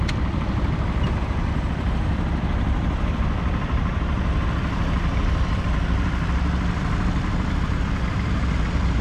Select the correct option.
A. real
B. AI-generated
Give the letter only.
B